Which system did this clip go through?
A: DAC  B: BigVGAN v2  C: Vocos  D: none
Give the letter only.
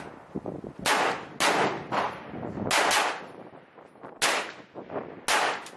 D